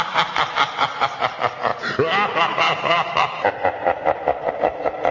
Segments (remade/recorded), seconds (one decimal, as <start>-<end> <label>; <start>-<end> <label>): 0.0-5.1 recorded